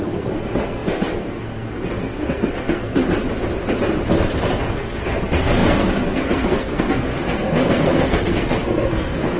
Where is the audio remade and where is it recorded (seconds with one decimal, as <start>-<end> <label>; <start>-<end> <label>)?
0.0-3.0 remade; 3.0-4.6 recorded; 4.6-9.4 remade